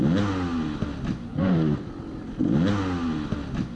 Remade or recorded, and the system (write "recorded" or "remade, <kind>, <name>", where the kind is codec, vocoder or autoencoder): recorded